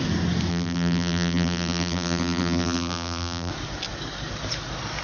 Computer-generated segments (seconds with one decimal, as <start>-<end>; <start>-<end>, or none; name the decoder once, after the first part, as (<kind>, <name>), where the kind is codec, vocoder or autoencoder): 0.5-3.5 (vocoder, BigVGAN v2)